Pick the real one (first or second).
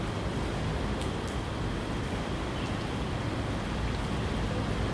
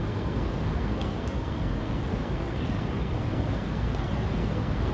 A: first